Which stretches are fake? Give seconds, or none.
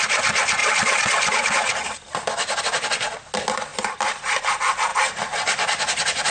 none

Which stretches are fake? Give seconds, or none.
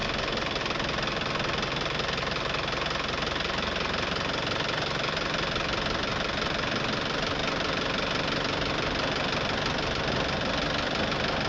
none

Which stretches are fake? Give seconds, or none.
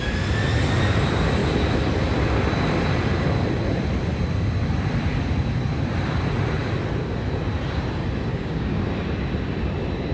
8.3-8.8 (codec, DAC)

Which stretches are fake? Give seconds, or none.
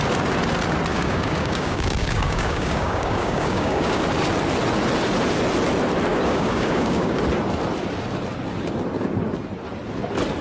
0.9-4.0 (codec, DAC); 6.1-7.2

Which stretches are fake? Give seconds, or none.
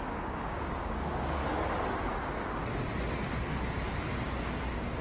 0.0-1.4 (codec, DAC); 4.4-5.0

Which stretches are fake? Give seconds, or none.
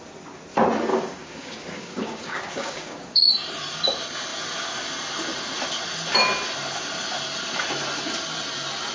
0.9-3.3 (codec, DAC)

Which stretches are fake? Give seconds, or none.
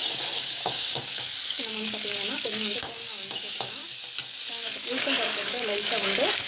0.0-3.8 (codec, DAC); 4.5-6.5